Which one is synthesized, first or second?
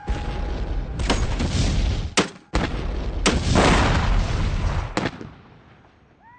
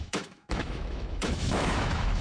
second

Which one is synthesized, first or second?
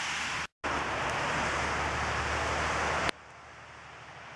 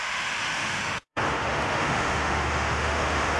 second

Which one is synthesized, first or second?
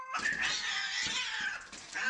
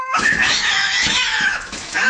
second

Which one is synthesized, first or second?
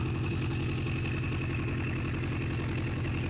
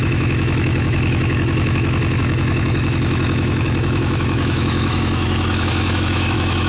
second